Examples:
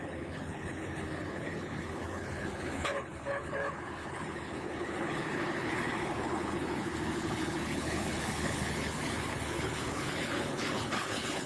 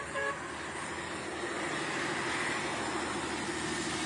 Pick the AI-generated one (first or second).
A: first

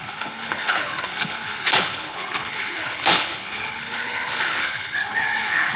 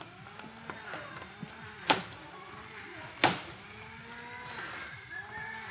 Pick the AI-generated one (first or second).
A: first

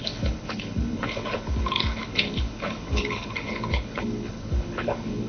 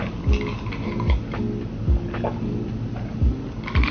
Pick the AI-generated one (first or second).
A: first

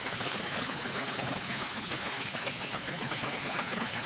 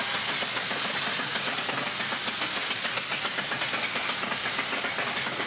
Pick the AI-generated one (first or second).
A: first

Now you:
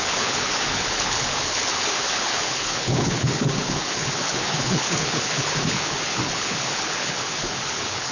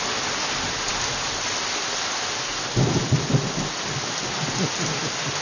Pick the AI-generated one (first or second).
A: first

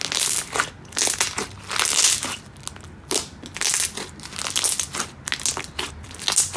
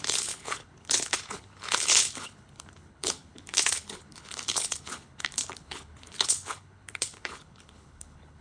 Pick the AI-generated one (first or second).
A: second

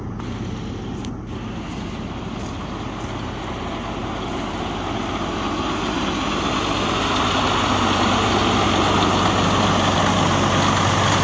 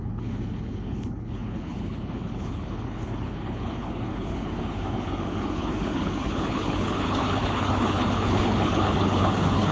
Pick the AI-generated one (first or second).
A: second